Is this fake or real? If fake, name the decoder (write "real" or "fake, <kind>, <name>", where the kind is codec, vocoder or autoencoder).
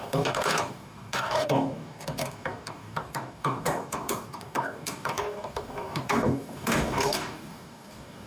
fake, codec, DAC